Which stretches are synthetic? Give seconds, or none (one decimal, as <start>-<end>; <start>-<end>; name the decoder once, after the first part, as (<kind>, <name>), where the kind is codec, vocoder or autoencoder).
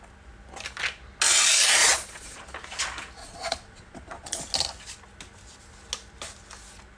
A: 1.8-2.4 (vocoder, Vocos); 3.2-4.4